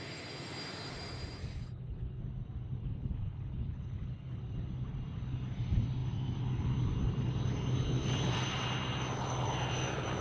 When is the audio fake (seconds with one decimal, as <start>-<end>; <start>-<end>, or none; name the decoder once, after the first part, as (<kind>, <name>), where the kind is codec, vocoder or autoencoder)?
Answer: 1.4-2.2 (codec, HILCodec); 2.8-4.4